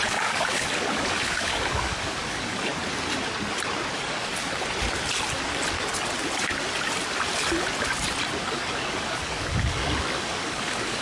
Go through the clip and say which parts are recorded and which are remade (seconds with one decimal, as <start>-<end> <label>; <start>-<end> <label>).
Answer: 0.0-2.7 remade; 2.7-3.9 recorded; 3.9-4.3 remade; 4.3-8.3 recorded; 8.3-11.0 remade